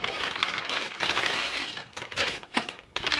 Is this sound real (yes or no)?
no